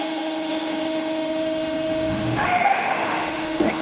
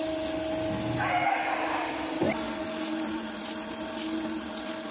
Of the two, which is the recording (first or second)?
second